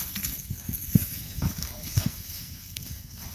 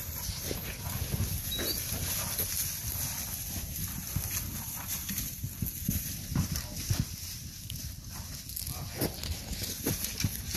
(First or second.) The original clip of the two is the second